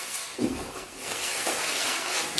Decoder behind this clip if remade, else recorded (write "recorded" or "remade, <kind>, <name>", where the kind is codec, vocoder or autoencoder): remade, codec, SNAC